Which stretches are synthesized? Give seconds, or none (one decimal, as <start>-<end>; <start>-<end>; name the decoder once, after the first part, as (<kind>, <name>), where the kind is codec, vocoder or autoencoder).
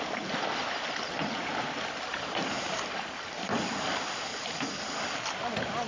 2.1-3.7 (vocoder, BigVGAN v2); 4.3-4.8